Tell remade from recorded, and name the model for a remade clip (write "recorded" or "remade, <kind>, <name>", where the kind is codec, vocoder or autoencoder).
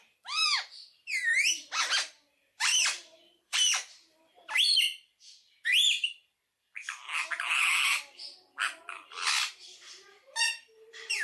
remade, vocoder, BigVGAN v2